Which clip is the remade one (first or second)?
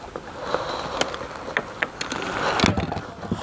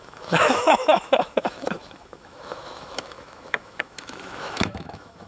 second